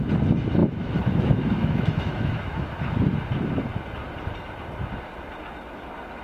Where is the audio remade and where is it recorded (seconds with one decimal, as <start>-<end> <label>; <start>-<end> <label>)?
0.0-0.6 recorded; 0.6-2.8 remade; 2.8-6.2 recorded